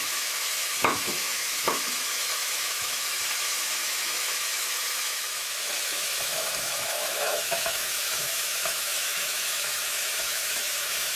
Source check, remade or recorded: remade